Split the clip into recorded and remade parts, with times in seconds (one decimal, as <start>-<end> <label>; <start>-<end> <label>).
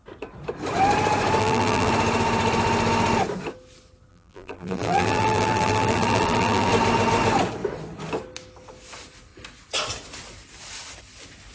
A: 0.0-1.4 recorded; 1.4-1.9 remade; 1.9-4.1 recorded; 4.1-6.7 remade; 6.7-11.5 recorded